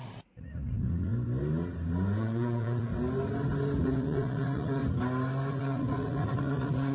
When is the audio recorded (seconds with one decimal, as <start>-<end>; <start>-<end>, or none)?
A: 1.1-2.2; 2.9-3.8; 4.8-5.5